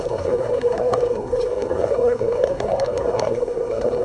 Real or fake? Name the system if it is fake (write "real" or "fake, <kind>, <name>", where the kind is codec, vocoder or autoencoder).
fake, codec, SNAC